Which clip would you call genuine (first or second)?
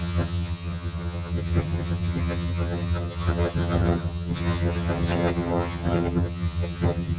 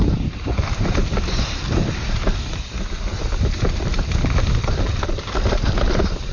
second